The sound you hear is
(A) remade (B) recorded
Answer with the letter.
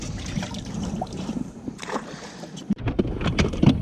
A